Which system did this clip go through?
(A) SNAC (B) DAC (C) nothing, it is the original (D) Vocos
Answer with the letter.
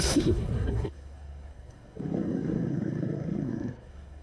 A